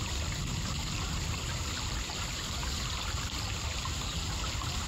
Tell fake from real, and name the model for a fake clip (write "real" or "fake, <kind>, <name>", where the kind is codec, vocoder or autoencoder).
real